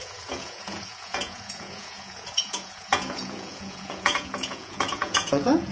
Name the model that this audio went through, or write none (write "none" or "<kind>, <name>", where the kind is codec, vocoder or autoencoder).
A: vocoder, Vocos